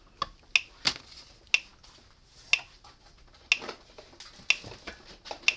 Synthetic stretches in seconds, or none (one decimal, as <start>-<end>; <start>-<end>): none